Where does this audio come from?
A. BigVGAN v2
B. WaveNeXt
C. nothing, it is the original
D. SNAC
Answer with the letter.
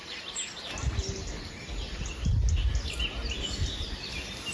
C